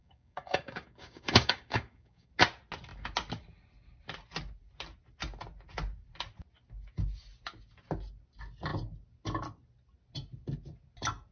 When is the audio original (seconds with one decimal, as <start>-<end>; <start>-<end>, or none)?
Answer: 2.3-11.3